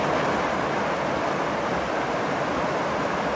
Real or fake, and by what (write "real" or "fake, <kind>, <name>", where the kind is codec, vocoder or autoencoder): real